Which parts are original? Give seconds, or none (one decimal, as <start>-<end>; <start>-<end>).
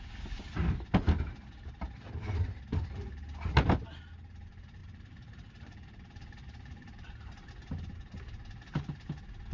0.0-4.8; 7.5-9.5